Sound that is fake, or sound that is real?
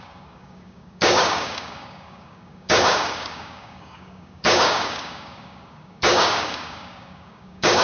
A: fake